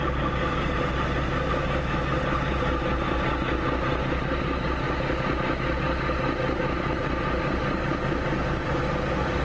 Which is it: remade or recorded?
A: recorded